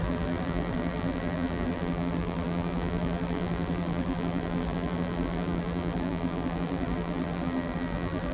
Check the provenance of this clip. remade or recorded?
remade